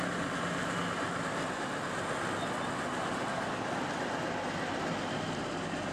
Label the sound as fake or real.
real